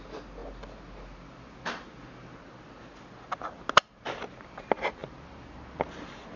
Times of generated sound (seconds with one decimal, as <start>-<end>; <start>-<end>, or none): none